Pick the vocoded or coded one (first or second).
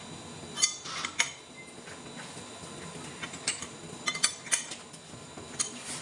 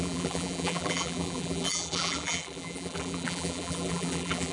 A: second